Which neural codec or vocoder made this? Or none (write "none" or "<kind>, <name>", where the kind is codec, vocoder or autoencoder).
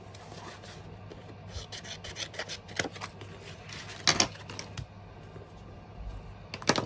none